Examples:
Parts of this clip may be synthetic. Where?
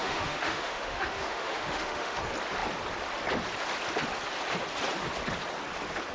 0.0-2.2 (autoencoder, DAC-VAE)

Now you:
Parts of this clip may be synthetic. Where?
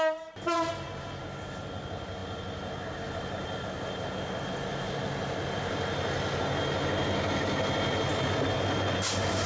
none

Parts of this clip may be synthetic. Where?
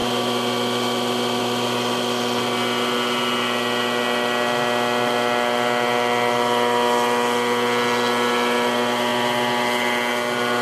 none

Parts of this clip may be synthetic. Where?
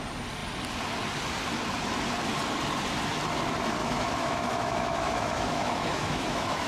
3.8-6.7 (autoencoder, DAC-VAE)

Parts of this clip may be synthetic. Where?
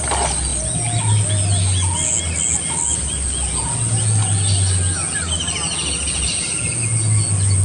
none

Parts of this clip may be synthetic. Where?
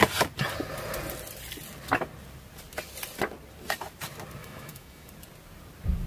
4.4-5.1 (autoencoder, DAC-VAE)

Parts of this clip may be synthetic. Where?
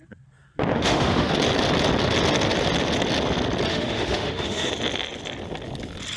0.7-1.3 (autoencoder, DAC-VAE); 3.7-4.7